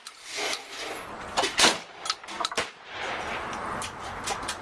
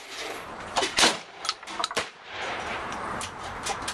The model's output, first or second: second